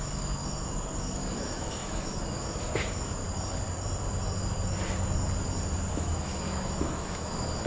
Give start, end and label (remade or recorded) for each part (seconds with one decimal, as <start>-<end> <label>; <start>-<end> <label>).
0.0-0.4 remade; 0.4-1.0 recorded; 1.0-3.2 remade; 3.2-5.9 recorded; 5.9-7.7 remade